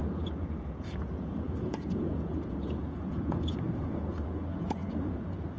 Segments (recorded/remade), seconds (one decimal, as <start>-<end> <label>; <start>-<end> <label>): 0.0-5.6 remade